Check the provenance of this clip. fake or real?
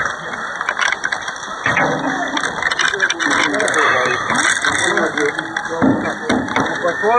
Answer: real